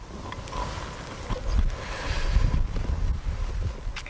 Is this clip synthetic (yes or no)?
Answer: no